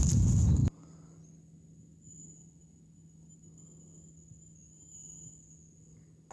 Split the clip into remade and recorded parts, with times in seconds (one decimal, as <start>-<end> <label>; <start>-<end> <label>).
0.0-6.3 recorded